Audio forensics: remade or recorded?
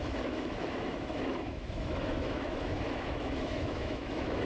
remade